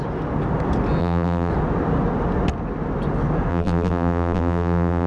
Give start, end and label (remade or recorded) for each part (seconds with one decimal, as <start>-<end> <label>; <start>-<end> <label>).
0.0-1.0 recorded; 1.0-1.5 remade; 1.5-3.5 recorded; 3.5-5.1 remade